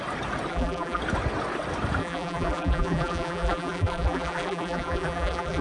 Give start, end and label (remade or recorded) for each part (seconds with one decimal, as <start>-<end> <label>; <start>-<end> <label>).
0.0-0.5 recorded; 0.5-1.0 remade; 1.0-2.0 recorded; 2.0-5.6 remade